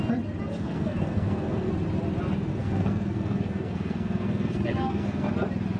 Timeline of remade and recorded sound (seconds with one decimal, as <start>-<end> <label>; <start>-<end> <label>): 0.0-0.5 recorded; 0.5-1.7 remade; 1.7-2.5 recorded; 2.5-5.3 remade; 5.3-5.8 recorded